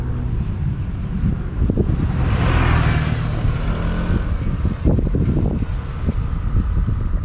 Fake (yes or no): no